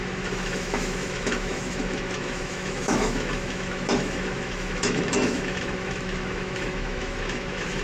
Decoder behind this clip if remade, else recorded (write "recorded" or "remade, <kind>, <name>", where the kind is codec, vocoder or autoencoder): remade, autoencoder, DAC-VAE